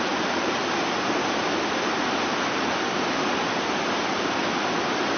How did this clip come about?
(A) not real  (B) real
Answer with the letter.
B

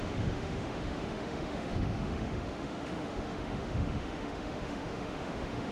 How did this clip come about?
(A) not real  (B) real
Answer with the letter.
A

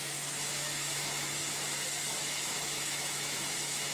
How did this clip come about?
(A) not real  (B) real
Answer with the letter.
A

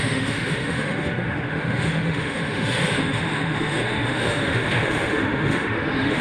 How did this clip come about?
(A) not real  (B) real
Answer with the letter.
A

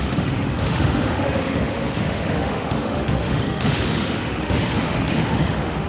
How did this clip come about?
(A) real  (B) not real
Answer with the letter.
B